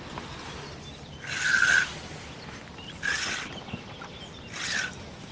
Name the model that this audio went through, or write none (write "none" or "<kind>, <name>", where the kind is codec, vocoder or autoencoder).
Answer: none